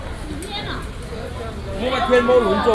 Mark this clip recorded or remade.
recorded